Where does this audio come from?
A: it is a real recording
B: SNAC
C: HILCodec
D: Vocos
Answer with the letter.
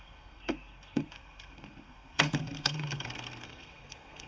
B